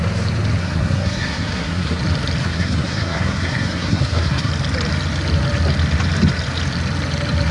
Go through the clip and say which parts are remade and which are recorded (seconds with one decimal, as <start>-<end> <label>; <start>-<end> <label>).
0.0-0.6 recorded; 0.6-2.0 remade; 2.0-2.4 recorded; 2.4-4.5 remade; 4.5-7.5 recorded

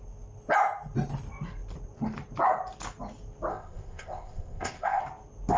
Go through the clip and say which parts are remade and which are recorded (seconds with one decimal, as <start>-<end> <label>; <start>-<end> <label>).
0.0-3.5 recorded; 3.5-5.0 remade; 5.0-5.6 recorded